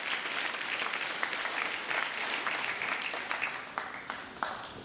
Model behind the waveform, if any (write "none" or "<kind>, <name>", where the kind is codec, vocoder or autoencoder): none